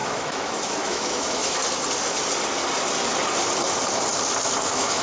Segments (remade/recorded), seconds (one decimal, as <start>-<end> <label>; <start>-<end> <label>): 0.0-1.6 remade; 1.6-4.6 recorded; 4.6-5.0 remade